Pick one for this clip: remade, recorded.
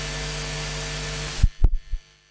recorded